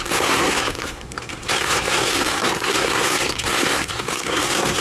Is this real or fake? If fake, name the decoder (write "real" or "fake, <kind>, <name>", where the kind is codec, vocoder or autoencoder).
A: fake, codec, SNAC